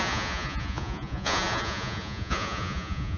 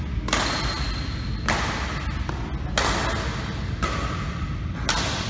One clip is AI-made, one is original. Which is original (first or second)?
second